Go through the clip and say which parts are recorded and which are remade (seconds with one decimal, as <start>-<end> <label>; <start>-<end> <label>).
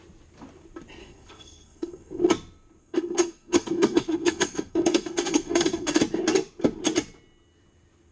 0.0-1.0 recorded; 1.0-2.2 remade; 2.2-2.8 recorded; 2.8-6.0 remade; 6.0-8.1 recorded